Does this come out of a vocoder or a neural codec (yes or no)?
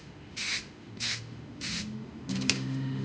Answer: yes